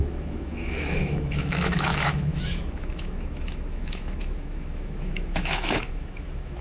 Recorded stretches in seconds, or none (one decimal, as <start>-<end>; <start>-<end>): none